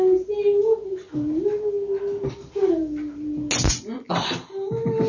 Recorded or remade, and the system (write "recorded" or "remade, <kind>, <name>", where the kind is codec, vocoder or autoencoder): recorded